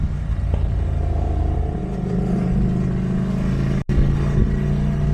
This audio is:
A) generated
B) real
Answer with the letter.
B